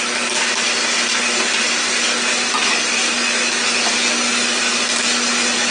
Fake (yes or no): no